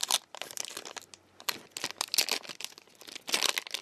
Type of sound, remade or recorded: recorded